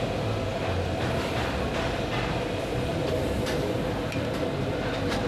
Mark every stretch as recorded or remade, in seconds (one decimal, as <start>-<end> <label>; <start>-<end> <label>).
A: 0.0-5.3 recorded